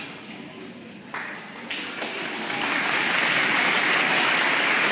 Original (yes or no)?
yes